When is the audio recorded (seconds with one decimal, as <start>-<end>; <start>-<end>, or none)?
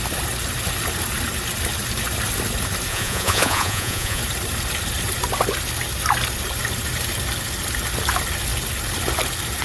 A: 0.0-2.9; 4.2-9.6